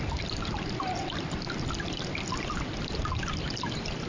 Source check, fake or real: real